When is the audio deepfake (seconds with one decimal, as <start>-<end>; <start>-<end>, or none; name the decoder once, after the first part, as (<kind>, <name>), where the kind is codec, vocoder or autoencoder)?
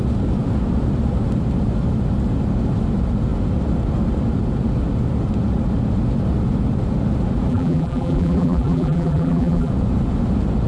7.5-9.7 (vocoder, BigVGAN v2)